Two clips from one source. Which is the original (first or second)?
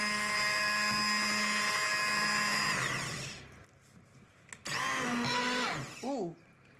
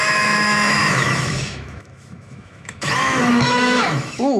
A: first